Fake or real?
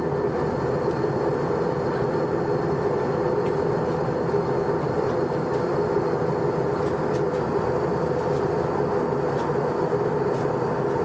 real